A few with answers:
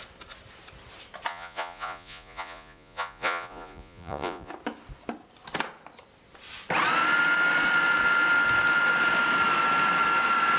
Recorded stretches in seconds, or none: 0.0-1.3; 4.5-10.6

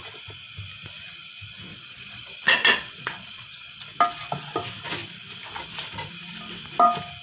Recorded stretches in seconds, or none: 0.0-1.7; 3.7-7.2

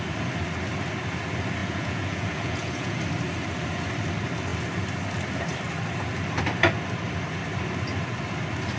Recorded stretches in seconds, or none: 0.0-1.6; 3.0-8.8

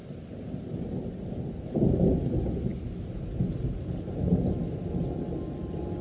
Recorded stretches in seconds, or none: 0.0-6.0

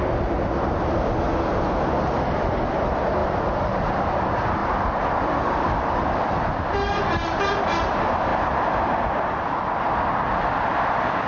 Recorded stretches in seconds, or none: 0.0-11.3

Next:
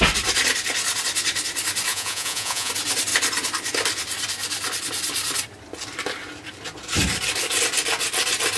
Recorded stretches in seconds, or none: 0.0-1.9; 2.7-8.6

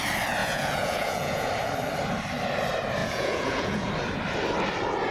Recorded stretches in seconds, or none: 0.0-0.4; 1.5-3.0; 3.9-5.1

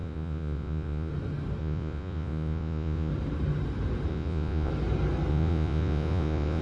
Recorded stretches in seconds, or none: 1.1-1.6; 3.1-4.1; 4.7-5.3